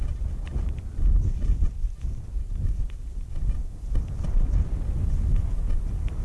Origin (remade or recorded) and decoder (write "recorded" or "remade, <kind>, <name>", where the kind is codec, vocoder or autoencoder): recorded